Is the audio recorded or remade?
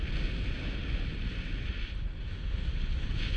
recorded